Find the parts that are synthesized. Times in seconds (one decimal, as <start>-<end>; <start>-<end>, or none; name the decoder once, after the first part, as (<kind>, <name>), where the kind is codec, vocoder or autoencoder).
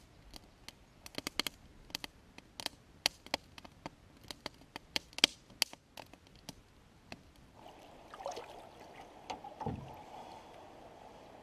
none